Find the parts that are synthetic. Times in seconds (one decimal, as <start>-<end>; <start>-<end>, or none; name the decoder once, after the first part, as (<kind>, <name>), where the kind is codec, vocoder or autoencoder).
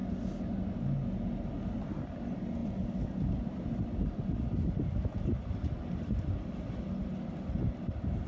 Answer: none